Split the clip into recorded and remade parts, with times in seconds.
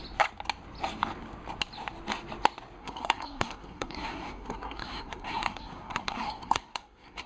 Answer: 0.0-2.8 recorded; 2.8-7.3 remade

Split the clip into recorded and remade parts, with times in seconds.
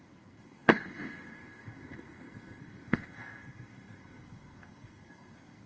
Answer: 0.0-5.7 remade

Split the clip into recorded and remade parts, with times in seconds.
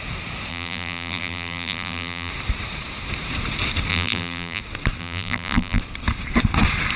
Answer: 0.0-0.5 recorded; 0.5-2.3 remade; 2.3-3.9 recorded; 3.9-4.6 remade; 4.6-5.0 recorded; 5.0-5.8 remade; 5.8-7.0 recorded